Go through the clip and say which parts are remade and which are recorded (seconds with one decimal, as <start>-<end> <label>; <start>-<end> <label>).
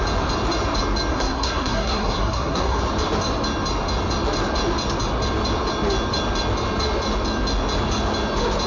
0.0-1.1 recorded; 1.1-2.8 remade; 2.8-8.7 recorded